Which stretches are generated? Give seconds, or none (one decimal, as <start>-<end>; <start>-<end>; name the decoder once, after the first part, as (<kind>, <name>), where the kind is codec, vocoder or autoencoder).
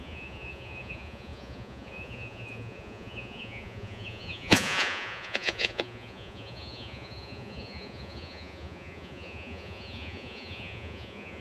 0.0-11.4 (vocoder, Vocos)